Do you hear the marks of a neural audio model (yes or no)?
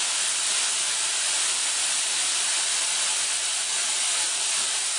yes